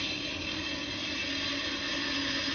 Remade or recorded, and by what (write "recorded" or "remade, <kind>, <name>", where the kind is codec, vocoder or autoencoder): recorded